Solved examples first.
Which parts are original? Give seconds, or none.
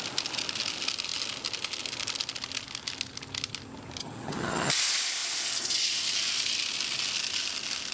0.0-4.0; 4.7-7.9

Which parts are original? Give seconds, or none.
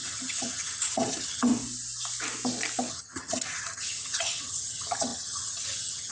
1.5-2.9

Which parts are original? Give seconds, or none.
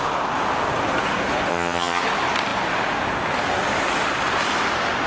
0.0-1.5; 2.0-5.1